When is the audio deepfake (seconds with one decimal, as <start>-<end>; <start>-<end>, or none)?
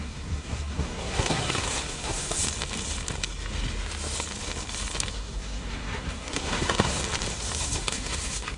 0.0-2.4; 5.1-7.0; 7.6-8.6